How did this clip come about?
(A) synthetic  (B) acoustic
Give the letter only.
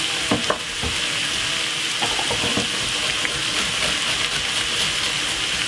B